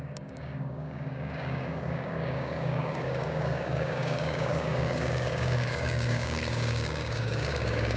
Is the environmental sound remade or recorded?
remade